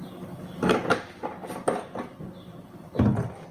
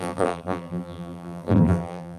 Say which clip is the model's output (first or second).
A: second